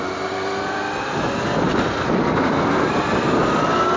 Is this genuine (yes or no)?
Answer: yes